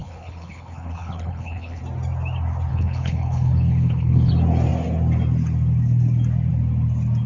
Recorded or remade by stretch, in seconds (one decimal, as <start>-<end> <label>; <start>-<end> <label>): 0.0-1.8 remade; 1.8-2.7 recorded; 2.7-4.3 remade; 4.3-7.3 recorded